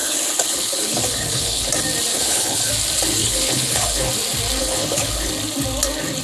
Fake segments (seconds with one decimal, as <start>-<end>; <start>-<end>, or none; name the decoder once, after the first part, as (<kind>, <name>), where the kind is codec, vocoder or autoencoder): 0.0-1.7 (codec, HILCodec); 2.1-2.7; 3.2-4.1; 4.6-5.3